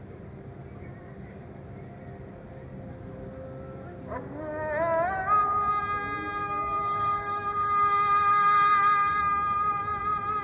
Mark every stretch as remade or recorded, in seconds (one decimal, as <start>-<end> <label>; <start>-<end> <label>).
0.0-6.4 recorded; 6.4-9.2 remade; 9.2-10.4 recorded